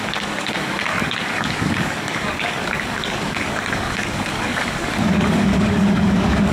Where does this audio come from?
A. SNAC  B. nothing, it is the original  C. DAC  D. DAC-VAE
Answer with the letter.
C